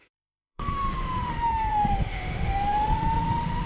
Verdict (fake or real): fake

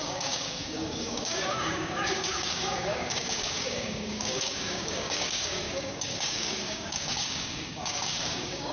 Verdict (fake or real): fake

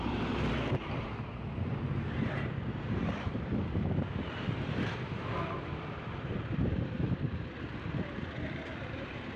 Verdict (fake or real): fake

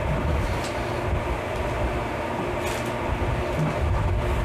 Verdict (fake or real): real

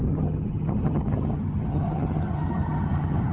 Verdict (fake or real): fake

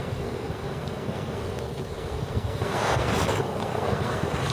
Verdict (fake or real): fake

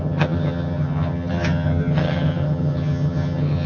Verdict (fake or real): fake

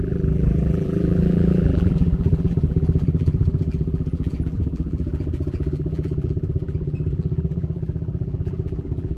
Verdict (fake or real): fake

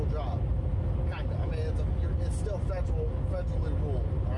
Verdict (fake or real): real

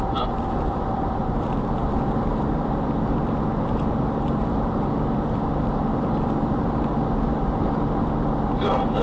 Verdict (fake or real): fake